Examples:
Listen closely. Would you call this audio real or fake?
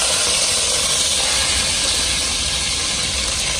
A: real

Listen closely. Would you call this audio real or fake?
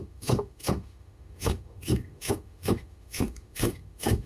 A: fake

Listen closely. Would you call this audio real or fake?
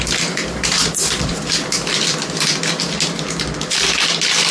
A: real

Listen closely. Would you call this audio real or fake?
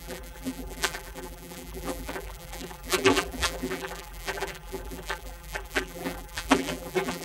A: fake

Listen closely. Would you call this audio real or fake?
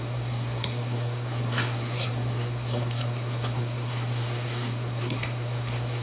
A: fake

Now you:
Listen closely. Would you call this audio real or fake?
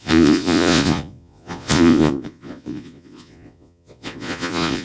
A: fake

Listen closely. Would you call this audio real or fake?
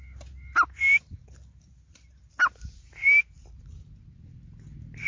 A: real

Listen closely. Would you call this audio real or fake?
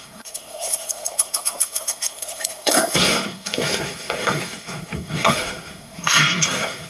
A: fake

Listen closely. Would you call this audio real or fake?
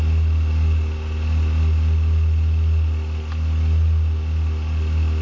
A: real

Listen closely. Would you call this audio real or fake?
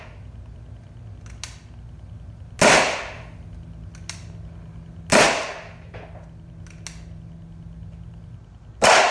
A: real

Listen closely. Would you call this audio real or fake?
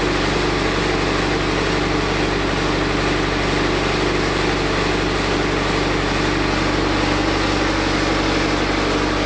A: real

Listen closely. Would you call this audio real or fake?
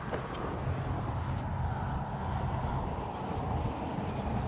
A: real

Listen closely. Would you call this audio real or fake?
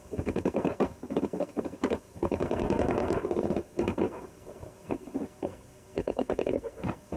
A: fake